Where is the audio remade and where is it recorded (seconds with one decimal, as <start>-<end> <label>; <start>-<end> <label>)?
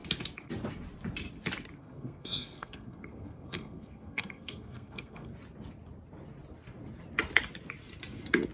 0.0-1.8 recorded; 1.8-5.3 remade; 5.3-8.5 recorded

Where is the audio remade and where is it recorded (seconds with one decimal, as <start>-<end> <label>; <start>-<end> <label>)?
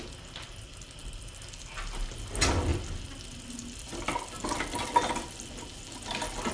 0.0-6.5 recorded